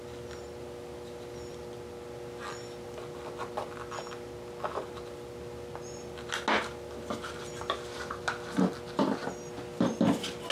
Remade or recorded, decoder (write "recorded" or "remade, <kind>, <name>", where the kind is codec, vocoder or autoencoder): recorded